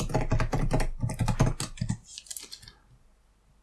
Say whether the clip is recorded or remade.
recorded